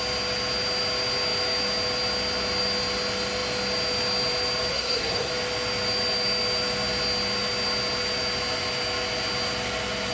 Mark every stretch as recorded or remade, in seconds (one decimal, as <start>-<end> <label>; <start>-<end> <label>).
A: 0.0-4.7 recorded; 4.7-5.3 remade; 5.3-10.1 recorded